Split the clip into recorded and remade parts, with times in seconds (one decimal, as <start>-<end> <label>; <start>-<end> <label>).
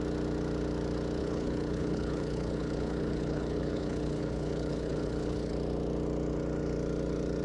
0.0-1.2 recorded; 1.2-5.5 remade; 5.5-7.4 recorded